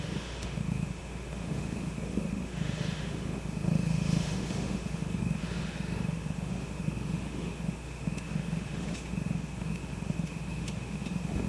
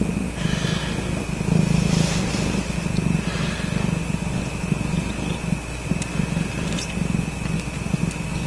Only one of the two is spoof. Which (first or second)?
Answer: first